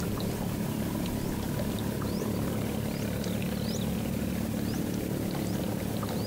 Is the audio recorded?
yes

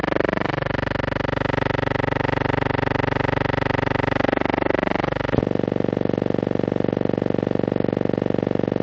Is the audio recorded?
yes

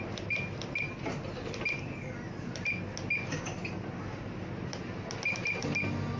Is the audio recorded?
yes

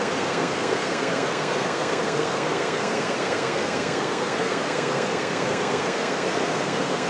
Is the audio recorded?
no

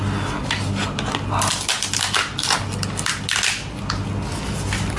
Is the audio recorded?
yes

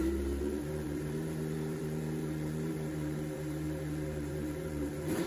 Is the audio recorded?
no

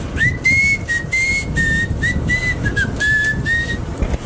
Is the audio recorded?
yes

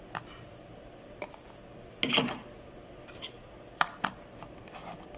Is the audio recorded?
yes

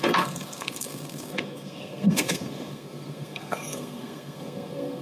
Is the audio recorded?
no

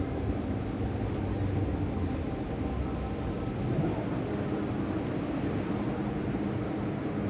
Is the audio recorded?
yes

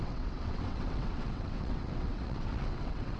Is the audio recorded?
no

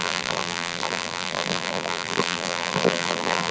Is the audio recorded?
no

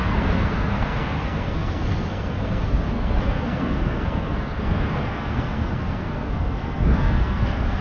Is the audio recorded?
no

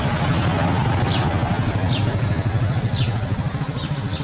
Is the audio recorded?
yes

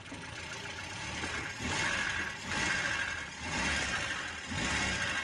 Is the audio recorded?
yes